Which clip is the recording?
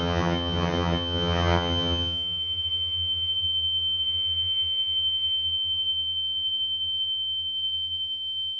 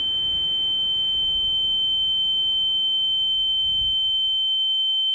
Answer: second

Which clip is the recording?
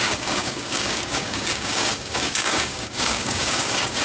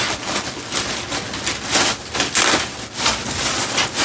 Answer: second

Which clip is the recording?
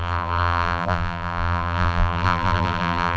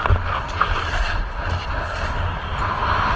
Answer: second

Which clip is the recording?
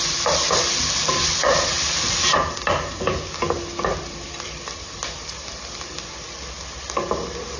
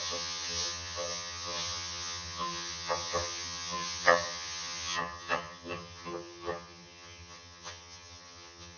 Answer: first